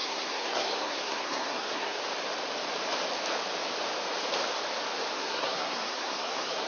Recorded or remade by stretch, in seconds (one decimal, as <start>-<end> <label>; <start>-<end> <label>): 0.0-2.0 remade; 2.0-5.2 recorded; 5.2-6.7 remade